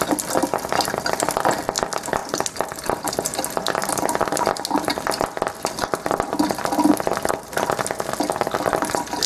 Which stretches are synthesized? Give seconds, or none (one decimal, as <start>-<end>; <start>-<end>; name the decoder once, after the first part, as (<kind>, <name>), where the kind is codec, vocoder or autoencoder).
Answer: none